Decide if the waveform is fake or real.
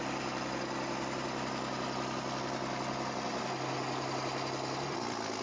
real